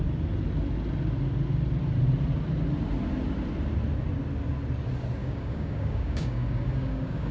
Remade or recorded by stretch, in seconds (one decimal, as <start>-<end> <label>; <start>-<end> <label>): 0.0-5.2 recorded; 5.2-7.3 remade